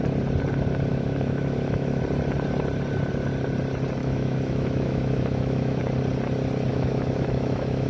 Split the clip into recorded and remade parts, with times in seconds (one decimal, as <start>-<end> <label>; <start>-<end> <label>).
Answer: 0.0-0.9 recorded; 0.9-2.0 remade; 2.0-4.0 recorded; 4.0-5.8 remade; 5.8-6.7 recorded; 6.7-7.9 remade